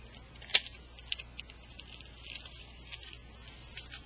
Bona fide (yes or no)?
yes